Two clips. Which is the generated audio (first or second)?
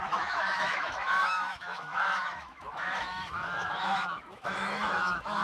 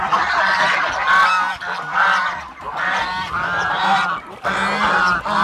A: first